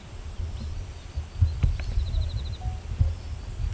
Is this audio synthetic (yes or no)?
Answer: no